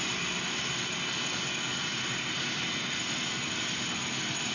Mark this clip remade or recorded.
recorded